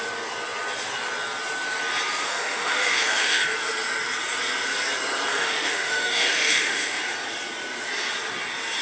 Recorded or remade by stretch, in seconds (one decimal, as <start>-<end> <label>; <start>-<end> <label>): 0.0-2.2 recorded; 2.2-3.4 remade; 3.4-5.3 recorded; 5.3-7.0 remade; 7.0-8.8 recorded